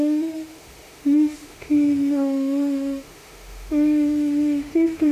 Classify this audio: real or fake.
fake